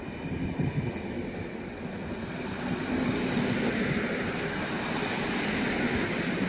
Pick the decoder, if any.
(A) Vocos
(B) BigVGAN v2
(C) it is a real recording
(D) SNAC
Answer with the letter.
C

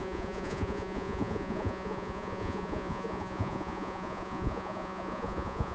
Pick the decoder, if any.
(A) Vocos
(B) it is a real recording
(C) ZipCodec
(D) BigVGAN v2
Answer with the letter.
A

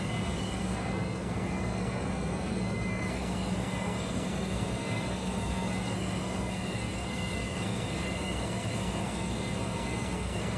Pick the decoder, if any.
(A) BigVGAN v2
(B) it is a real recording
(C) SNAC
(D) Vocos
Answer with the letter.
C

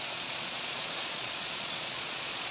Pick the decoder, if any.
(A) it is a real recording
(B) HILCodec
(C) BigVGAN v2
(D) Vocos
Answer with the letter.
D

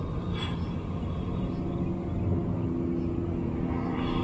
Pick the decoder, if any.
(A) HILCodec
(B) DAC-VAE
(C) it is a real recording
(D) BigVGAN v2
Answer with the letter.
C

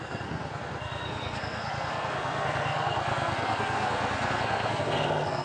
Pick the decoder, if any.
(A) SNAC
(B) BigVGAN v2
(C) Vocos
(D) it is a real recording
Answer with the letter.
A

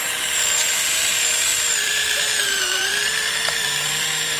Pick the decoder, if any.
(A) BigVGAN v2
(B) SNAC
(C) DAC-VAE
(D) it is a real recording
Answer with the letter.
A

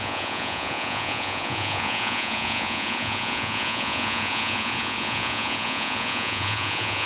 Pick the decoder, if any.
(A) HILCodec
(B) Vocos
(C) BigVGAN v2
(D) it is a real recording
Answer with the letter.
B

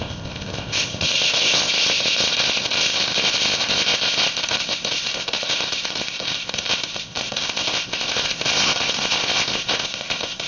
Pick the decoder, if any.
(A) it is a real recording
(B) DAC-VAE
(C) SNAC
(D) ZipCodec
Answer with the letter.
D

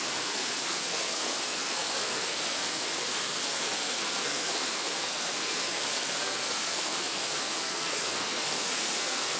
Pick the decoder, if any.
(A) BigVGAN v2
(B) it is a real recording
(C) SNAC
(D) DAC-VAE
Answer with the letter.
C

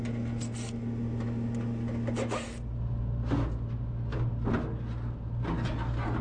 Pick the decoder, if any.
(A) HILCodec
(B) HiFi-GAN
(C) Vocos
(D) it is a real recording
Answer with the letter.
D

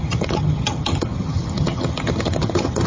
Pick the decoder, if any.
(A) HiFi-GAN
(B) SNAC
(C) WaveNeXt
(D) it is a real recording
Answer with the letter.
A